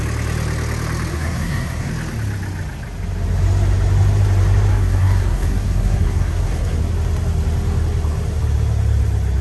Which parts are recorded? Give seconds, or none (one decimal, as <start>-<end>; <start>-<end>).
0.0-1.1; 1.9-4.7; 6.8-9.4